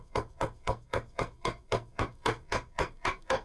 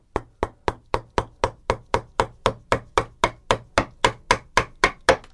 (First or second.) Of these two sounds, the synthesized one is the first